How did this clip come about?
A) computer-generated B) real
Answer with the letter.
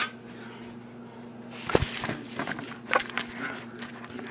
B